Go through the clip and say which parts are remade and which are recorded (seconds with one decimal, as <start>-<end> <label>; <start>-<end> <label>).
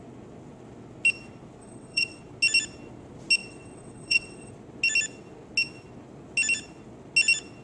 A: 0.0-1.6 recorded; 1.6-2.2 remade; 2.2-3.4 recorded; 3.4-4.5 remade; 4.5-7.6 recorded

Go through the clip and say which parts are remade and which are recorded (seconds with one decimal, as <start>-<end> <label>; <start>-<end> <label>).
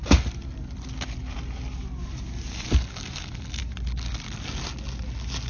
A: 0.0-5.5 recorded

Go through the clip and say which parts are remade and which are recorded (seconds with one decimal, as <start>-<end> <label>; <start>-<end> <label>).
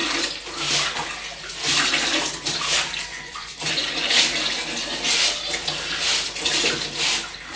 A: 0.0-3.1 recorded; 3.1-3.9 remade; 3.9-7.6 recorded